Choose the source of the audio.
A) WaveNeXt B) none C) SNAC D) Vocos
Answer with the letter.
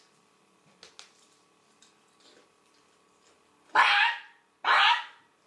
B